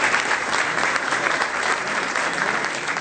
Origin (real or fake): fake